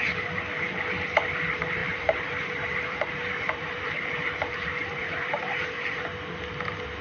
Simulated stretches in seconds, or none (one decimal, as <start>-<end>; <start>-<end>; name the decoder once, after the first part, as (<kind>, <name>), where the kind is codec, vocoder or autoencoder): 1.8-6.0 (vocoder, BigVGAN v2)